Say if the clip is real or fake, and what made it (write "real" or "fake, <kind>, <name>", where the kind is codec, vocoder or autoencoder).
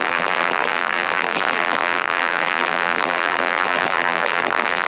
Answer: fake, vocoder, BigVGAN v2